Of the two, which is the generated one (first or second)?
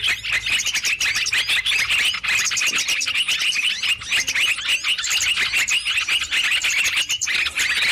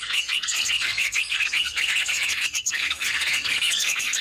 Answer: second